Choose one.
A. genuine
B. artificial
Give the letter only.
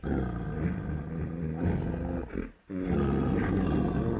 A